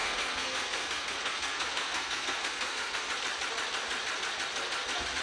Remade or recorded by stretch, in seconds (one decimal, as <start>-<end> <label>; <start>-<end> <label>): 0.0-3.1 remade; 3.1-5.2 recorded